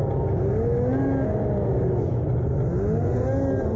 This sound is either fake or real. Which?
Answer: real